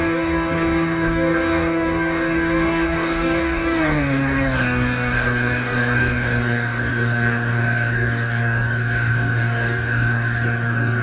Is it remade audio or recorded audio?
remade